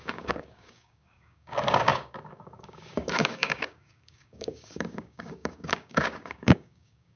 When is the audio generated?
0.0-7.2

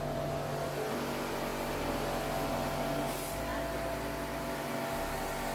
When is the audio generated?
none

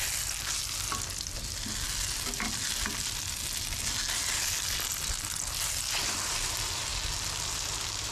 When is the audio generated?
none

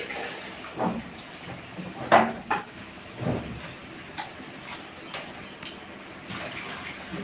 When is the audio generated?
2.4-3.0

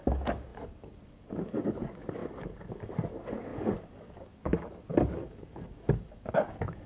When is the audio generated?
0.0-6.9

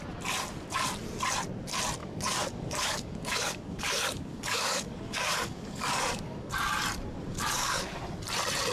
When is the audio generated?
2.0-6.5; 7.3-8.0

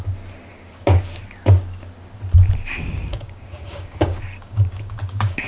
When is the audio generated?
0.5-1.1; 3.1-5.5